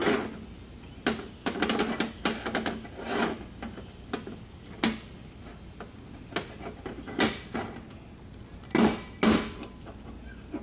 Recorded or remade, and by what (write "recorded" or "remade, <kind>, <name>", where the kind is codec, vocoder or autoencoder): recorded